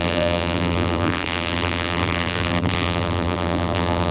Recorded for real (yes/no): no